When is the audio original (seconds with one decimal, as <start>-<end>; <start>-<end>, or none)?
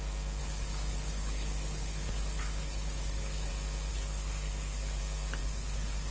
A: 0.0-0.4; 3.5-3.9; 5.0-5.4